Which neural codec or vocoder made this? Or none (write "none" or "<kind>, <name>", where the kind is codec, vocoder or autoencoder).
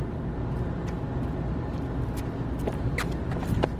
none